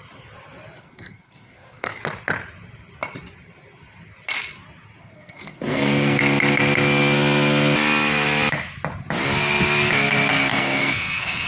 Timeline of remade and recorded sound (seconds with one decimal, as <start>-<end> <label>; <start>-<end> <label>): 0.0-0.8 recorded; 0.8-2.0 remade; 2.0-5.0 recorded; 5.0-6.2 remade; 6.2-10.5 recorded; 10.5-11.5 remade